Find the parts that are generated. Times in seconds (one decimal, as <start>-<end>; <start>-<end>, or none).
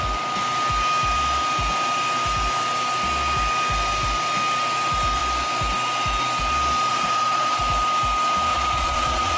6.9-7.6; 8.5-9.4